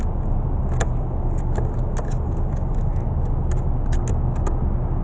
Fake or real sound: real